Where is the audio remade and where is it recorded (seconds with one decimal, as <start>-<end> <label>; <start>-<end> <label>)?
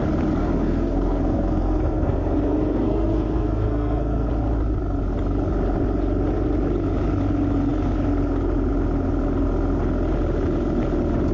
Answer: 0.0-0.4 recorded; 0.4-4.3 remade; 4.3-11.3 recorded